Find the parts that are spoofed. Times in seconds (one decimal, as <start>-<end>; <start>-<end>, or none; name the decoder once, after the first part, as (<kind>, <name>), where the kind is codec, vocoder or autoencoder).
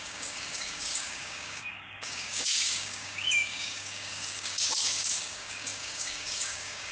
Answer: 0.0-6.9 (codec, DAC)